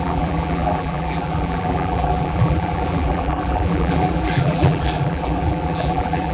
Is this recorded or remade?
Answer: remade